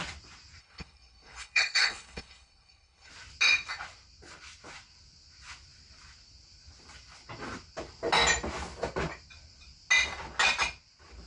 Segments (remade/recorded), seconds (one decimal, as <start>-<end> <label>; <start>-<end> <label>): 0.0-0.6 recorded; 0.6-3.1 remade; 3.1-11.3 recorded